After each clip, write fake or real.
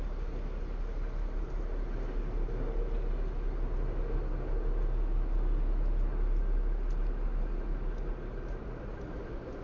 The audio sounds real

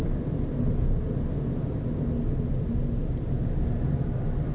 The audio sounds real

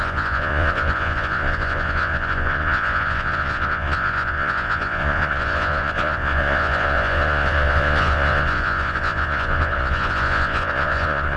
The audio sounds fake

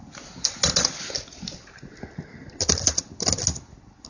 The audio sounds real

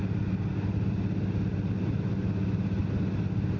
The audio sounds real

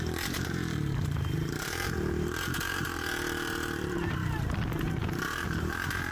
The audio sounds fake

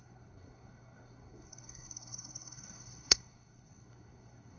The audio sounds fake